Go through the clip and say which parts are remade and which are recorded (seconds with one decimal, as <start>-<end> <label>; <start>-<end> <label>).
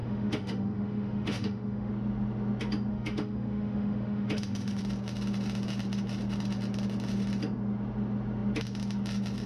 0.0-1.9 remade; 1.9-2.9 recorded; 2.9-4.8 remade; 4.8-9.5 recorded